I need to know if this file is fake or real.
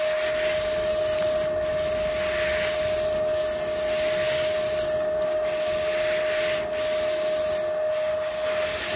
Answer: real